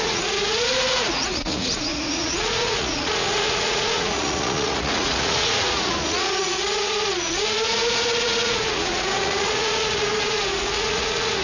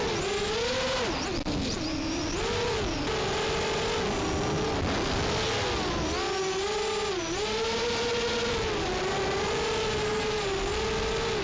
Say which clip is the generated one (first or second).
first